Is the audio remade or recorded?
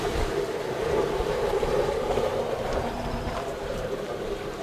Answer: remade